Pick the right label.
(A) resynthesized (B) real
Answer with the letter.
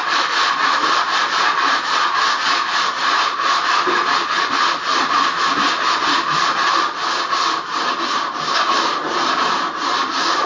B